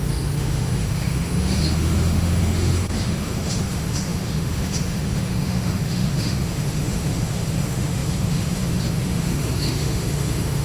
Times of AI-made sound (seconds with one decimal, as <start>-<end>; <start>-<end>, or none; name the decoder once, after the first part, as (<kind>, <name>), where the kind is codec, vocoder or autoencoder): 0.0-10.6 (autoencoder, DAC-VAE)